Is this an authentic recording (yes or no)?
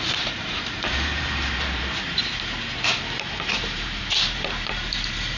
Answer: no